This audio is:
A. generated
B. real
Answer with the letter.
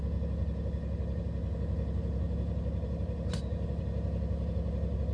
B